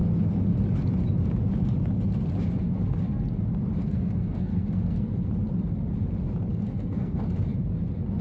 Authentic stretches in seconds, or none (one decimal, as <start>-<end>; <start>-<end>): 0.0-3.8; 5.3-6.5; 7.2-8.2